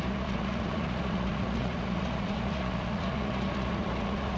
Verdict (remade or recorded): remade